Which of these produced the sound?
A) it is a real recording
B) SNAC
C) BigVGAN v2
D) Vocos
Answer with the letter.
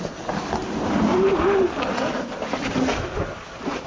A